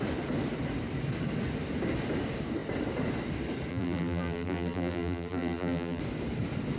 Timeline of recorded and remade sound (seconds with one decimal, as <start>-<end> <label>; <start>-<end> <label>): 0.0-3.7 recorded; 3.7-6.0 remade; 6.0-6.8 recorded